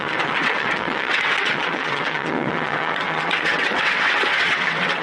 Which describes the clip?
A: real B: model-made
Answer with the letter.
B